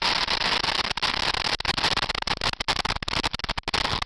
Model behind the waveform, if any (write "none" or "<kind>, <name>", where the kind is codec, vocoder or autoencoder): none